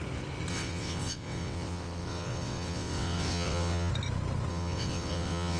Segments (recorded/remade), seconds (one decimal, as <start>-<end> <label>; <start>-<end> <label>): 0.0-0.5 recorded; 0.5-3.9 remade; 3.9-4.5 recorded; 4.5-5.6 remade

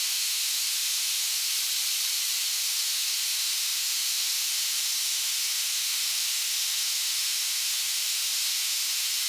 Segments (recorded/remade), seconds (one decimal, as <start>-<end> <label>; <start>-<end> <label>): 0.0-1.5 remade; 1.5-2.4 recorded; 2.4-9.3 remade

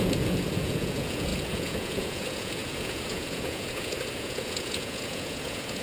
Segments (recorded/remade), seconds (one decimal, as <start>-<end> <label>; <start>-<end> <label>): 0.0-5.8 remade

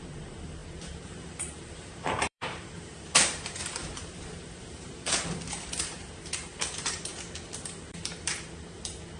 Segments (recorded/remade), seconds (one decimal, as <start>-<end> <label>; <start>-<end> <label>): 0.0-9.2 remade

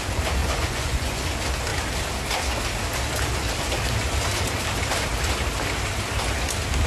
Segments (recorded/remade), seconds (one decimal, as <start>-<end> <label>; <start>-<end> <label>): 0.0-0.4 recorded; 0.4-1.2 remade; 1.2-6.9 recorded

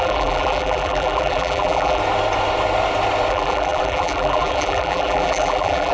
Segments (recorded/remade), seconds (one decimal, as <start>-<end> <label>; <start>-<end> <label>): 0.0-2.0 remade; 2.0-3.3 recorded; 3.3-5.9 remade

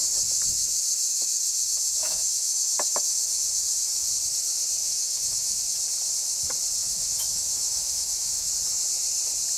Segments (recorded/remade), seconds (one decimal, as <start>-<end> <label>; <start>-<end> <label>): 0.0-1.1 recorded; 1.1-4.1 remade; 4.1-4.8 recorded; 4.8-5.6 remade; 5.6-6.8 recorded; 6.8-8.5 remade; 8.5-9.6 recorded

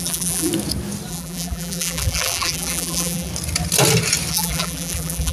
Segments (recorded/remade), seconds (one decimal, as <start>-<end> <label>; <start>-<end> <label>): 0.0-0.5 remade; 0.5-1.1 recorded; 1.1-3.3 remade; 3.3-4.3 recorded; 4.3-5.3 remade